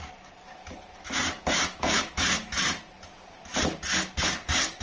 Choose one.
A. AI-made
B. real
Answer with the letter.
B